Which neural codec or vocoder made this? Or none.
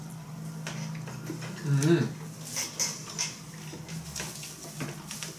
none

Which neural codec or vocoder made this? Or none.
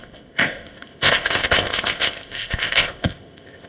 codec, ZipCodec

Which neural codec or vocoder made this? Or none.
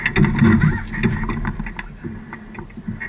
none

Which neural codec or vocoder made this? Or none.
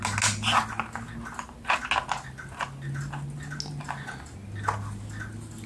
none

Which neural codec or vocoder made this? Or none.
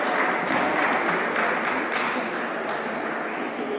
none